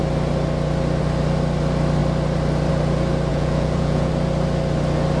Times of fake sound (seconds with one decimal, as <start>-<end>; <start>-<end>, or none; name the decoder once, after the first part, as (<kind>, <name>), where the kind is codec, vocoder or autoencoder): 3.3-4.1 (vocoder, Vocos)